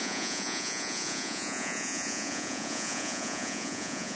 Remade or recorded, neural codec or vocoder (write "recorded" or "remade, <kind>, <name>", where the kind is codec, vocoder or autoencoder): remade, vocoder, Vocos